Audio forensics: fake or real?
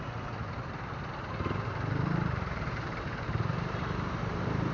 fake